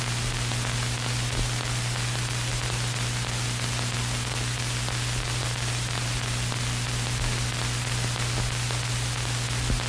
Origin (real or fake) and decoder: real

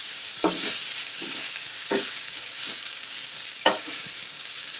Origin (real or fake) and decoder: fake, codec, DAC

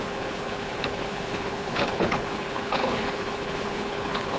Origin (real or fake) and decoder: fake, codec, HILCodec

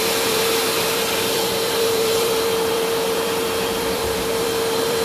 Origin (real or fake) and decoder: fake, vocoder, BigVGAN v2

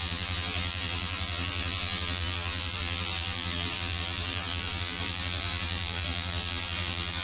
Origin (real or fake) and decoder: fake, vocoder, BigVGAN v2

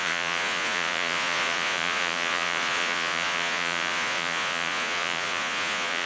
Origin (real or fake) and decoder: fake, vocoder, Vocos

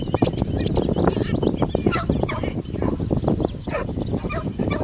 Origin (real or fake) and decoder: real